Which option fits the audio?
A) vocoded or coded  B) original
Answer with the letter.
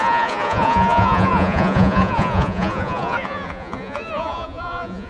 A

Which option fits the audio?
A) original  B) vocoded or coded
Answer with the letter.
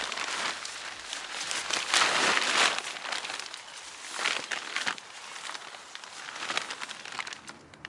A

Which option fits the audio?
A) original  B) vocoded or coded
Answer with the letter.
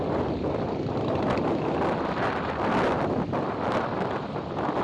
A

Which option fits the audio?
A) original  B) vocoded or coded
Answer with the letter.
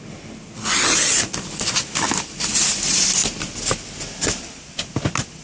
A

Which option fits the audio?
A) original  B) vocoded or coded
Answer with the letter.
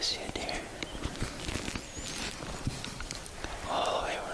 A